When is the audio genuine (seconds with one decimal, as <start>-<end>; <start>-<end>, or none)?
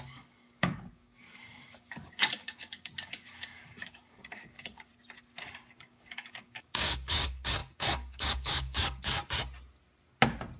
4.9-5.8; 9.2-10.6